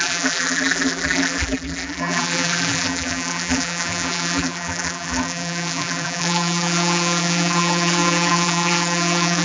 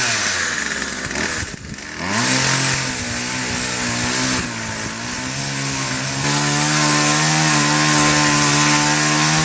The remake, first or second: first